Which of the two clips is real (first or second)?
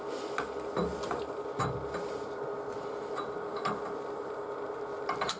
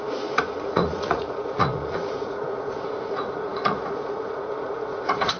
first